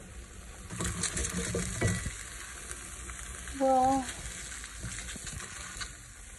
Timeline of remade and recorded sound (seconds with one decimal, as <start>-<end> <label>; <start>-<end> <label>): 0.0-6.4 recorded